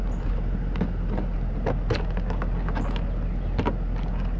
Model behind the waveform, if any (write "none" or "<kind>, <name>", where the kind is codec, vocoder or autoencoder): none